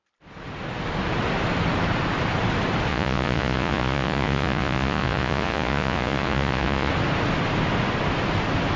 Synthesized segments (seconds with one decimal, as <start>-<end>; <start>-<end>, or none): 2.9-6.9

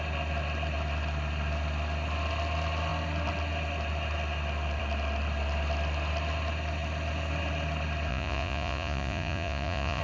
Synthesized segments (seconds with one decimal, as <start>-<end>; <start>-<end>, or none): 8.1-10.0

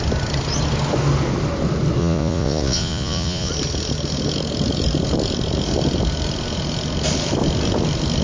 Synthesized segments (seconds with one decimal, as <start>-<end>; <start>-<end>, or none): 2.0-3.5

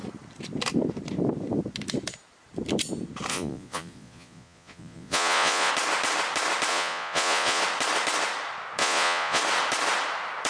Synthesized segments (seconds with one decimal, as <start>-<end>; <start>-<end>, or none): 3.3-5.7; 6.7-7.6; 8.8-9.4

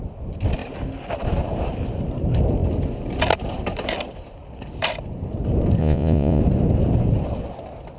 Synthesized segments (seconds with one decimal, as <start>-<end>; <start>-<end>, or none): 5.8-6.4

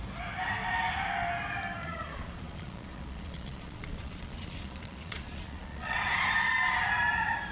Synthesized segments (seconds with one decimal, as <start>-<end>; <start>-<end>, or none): 1.8-6.3